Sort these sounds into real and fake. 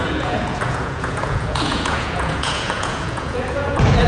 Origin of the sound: fake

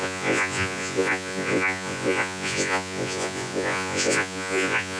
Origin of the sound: fake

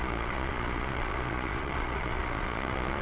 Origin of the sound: fake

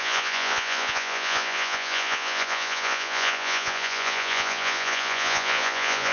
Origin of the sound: fake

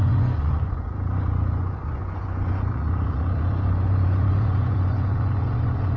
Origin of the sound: fake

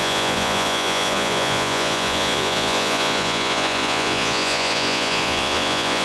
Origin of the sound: fake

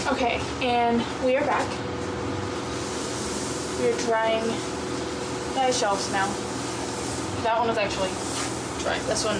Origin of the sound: real